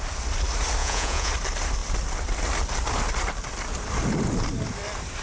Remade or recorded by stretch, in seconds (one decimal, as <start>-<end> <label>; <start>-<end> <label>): 0.0-0.8 recorded; 0.8-1.3 remade; 1.3-5.2 recorded